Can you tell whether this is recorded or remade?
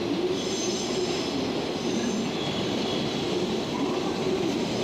recorded